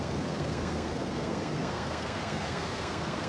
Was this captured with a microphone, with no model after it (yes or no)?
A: no